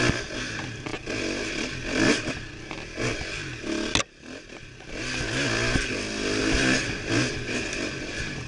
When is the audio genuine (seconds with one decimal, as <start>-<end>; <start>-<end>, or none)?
0.0-8.5

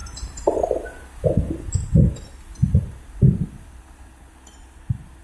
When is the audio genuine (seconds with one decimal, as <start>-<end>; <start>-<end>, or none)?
0.6-5.2

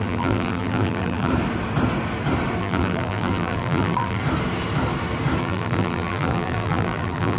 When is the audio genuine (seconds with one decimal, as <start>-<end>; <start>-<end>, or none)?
1.3-2.6; 4.2-5.4

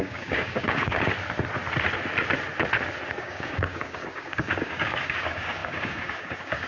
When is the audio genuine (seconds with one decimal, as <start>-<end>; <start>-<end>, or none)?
1.1-3.2

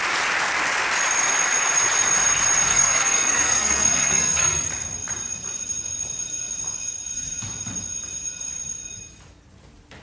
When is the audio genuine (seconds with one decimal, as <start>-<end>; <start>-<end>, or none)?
0.0-2.7; 4.7-10.0

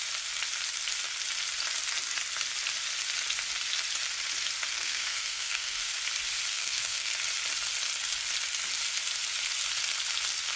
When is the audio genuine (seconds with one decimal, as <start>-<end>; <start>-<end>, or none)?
0.0-4.7; 5.9-6.5; 7.1-10.6

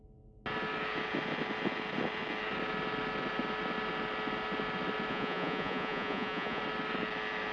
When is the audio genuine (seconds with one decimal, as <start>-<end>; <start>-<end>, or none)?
0.0-5.1; 6.6-7.5